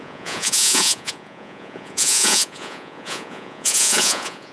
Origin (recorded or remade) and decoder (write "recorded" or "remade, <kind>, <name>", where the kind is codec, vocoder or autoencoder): remade, vocoder, Vocos